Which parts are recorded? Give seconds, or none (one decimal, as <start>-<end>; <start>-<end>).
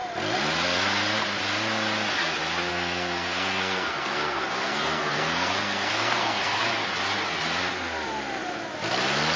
0.0-2.7; 6.6-9.4